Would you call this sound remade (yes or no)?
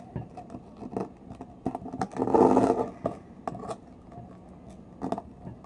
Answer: no